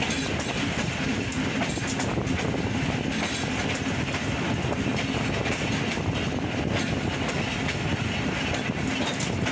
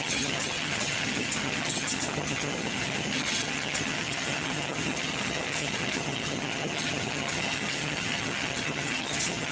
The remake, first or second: second